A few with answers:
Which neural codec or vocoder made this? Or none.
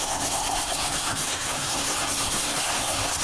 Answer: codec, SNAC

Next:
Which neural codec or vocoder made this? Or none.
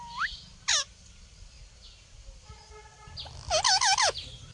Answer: none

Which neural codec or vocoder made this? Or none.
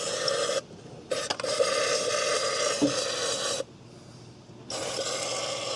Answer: none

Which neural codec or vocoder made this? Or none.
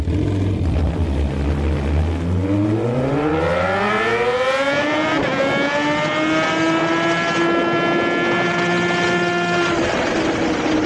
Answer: none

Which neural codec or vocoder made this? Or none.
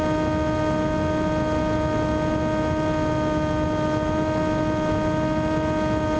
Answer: none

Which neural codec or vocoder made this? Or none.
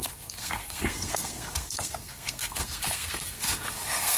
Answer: codec, SNAC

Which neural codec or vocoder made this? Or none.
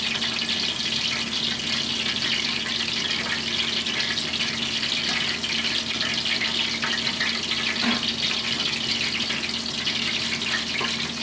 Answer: none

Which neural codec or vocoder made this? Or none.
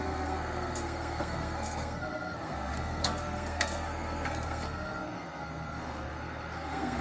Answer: codec, SNAC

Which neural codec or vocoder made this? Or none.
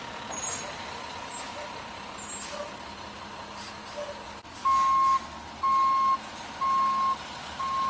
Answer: none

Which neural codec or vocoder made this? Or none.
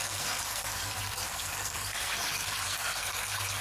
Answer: codec, SNAC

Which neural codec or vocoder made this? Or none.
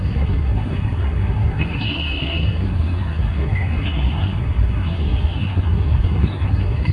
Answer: codec, SNAC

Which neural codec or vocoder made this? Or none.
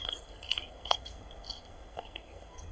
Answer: codec, SNAC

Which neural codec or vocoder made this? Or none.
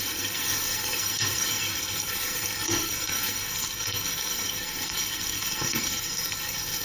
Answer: codec, SNAC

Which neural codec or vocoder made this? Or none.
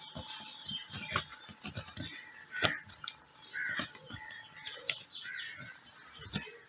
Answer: none